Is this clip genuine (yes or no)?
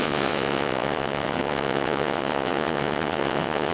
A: no